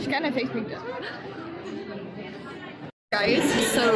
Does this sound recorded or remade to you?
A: recorded